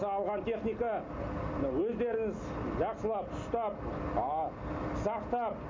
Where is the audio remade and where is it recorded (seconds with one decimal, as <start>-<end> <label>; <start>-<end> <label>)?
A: 0.0-5.7 recorded